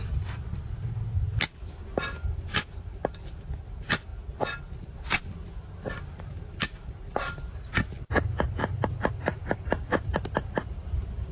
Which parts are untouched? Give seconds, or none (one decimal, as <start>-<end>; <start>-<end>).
0.0-11.3